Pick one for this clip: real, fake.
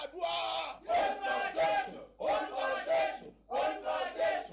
real